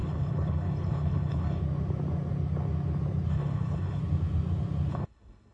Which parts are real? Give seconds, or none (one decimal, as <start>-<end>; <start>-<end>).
1.6-3.3; 4.0-4.9